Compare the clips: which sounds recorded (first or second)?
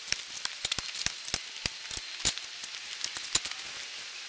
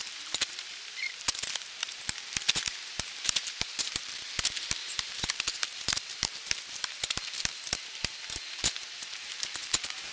first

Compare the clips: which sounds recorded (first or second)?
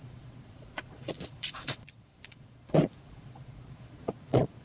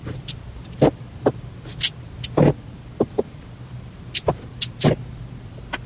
second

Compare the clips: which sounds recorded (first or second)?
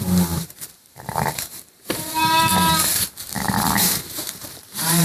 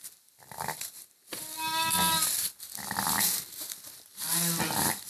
second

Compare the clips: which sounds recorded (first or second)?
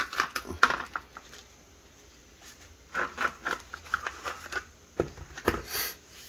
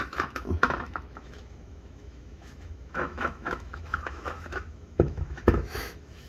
first